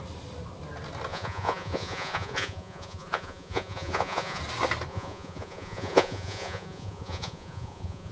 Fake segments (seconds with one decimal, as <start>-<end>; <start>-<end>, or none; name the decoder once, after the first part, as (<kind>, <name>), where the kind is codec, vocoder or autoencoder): 1.1-4.4 (vocoder, Vocos); 4.9-8.1